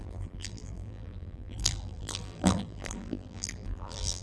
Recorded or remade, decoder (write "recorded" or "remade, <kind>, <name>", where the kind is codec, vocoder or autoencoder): remade, vocoder, BigVGAN v2